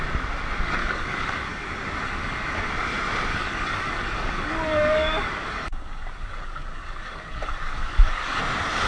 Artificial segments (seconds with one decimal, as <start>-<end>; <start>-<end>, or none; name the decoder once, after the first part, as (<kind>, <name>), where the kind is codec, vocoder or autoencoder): 0.8-2.7 (codec, DAC); 3.3-8.4